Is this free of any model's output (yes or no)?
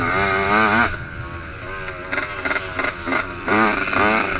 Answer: yes